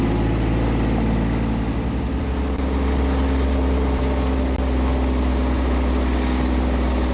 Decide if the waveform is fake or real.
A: real